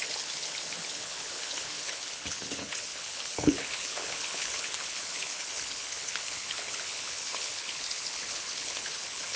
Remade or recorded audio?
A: remade